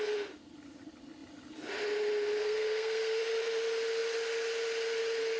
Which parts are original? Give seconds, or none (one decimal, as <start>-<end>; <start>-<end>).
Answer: 0.0-2.4; 3.2-5.4